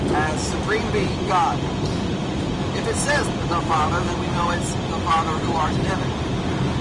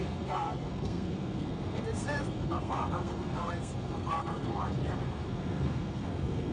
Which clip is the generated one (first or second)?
second